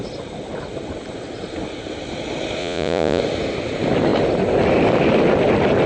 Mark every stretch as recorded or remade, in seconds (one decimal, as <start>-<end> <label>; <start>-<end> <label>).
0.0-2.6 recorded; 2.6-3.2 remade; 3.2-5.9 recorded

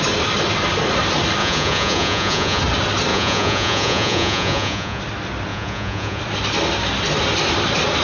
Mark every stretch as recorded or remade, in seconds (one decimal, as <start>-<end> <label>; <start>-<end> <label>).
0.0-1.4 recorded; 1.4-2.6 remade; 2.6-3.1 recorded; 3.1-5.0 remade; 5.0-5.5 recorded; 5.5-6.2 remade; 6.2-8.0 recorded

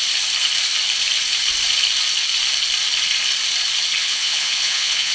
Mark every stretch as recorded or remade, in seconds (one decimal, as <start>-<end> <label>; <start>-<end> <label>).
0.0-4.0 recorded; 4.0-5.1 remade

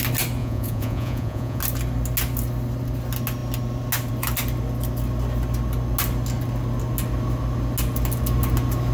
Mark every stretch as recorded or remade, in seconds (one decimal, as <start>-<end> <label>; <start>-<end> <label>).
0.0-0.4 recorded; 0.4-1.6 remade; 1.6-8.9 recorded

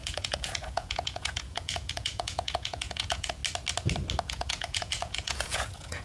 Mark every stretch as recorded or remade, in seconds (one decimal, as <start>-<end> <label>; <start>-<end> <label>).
0.0-3.4 remade; 3.4-4.2 recorded; 4.2-6.0 remade